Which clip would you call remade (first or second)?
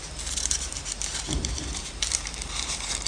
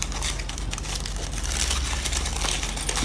first